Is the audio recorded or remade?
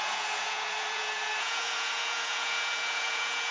remade